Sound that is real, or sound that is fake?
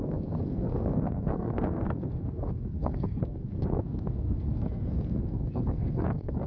fake